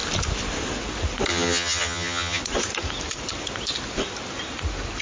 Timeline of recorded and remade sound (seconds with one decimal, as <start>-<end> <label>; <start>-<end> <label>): 0.0-1.3 recorded; 1.3-2.4 remade; 2.4-5.0 recorded